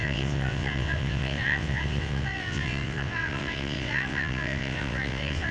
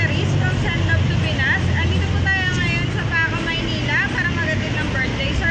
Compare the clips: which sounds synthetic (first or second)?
first